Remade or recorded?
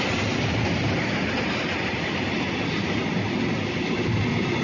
recorded